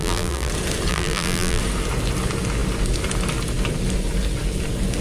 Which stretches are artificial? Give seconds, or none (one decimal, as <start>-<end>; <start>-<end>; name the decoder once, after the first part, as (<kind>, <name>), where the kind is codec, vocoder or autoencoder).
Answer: 0.0-0.5 (vocoder, BigVGAN v2); 0.9-1.6